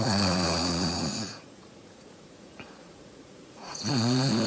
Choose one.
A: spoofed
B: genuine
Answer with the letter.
A